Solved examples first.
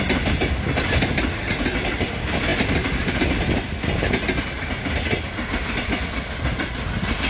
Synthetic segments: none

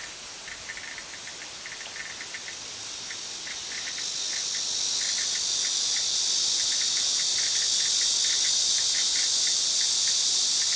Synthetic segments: none

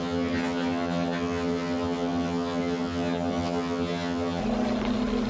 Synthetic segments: 0.0-4.4 (vocoder, HiFi-GAN)

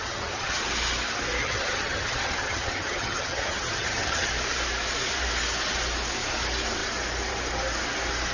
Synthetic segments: 0.0-0.6 (vocoder, HiFi-GAN); 1.4-4.3

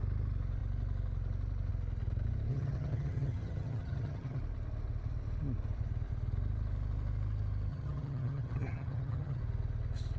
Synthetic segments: 2.5-4.4 (vocoder, HiFi-GAN); 7.7-9.4

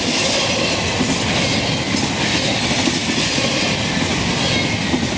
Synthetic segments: none

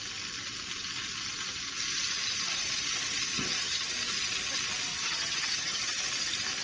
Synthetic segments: 3.3-3.9 (vocoder, HiFi-GAN); 4.9-6.0

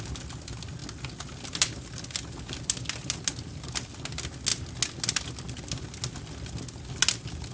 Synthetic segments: none